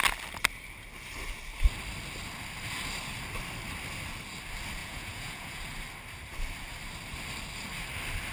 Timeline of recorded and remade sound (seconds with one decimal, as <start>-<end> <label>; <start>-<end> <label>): 0.0-4.8 recorded; 4.8-5.6 remade; 5.6-8.3 recorded